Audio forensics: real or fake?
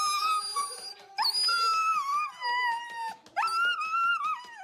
real